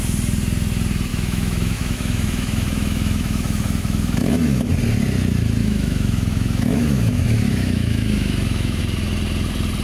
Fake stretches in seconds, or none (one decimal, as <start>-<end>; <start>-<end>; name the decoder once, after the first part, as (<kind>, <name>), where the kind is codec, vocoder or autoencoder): 1.1-4.7 (autoencoder, DAC-VAE); 5.6-8.8